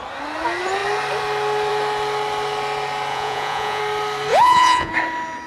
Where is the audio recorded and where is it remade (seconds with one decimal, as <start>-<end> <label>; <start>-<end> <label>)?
0.0-3.1 recorded; 3.1-3.8 remade; 3.8-4.3 recorded; 4.3-4.9 remade; 4.9-5.5 recorded